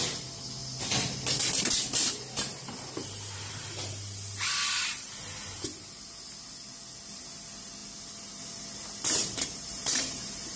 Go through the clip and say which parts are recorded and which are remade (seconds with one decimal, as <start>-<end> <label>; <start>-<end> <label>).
0.0-2.0 recorded; 2.0-3.7 remade; 3.7-9.2 recorded; 9.2-10.2 remade; 10.2-10.6 recorded